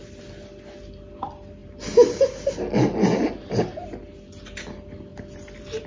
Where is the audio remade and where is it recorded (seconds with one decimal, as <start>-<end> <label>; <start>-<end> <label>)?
0.0-5.9 recorded